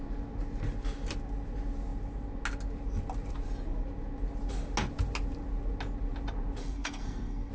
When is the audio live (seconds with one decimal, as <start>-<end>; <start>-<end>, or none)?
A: 0.0-6.6